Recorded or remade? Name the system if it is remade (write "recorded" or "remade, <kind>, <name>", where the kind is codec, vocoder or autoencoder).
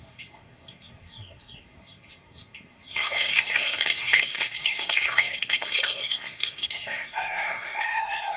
remade, codec, SNAC